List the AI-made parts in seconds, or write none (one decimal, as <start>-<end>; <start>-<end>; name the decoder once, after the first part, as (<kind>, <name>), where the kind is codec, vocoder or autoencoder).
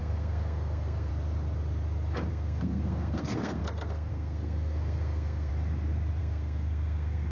0.0-1.1 (codec, SNAC); 2.3-5.5; 6.2-7.3